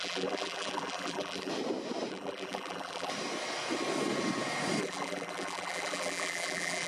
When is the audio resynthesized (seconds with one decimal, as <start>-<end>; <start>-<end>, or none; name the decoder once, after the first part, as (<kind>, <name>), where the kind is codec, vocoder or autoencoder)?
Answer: 0.0-1.5 (vocoder, BigVGAN v2); 2.1-3.1; 4.8-6.9